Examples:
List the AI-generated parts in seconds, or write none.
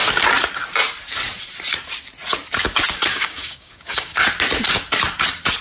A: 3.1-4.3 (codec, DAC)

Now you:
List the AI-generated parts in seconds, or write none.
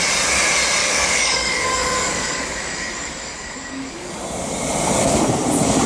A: 0.8-4.1 (codec, DAC)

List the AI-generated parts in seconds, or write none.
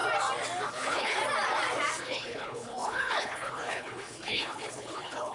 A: 0.7-1.2 (codec, HILCodec); 2.0-5.3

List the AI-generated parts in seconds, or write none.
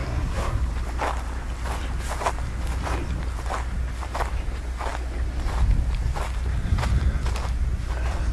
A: 0.0-0.7 (codec, SNAC)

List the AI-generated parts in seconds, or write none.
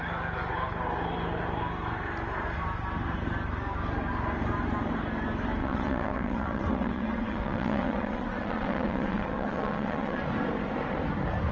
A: 5.6-10.2 (vocoder, WaveNeXt)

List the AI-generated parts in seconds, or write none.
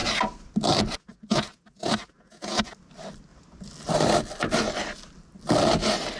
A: none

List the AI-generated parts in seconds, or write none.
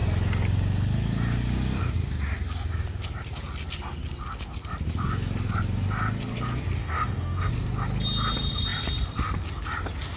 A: 6.8-7.5 (codec, DAC)